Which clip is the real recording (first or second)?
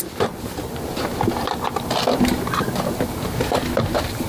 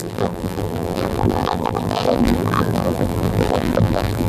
first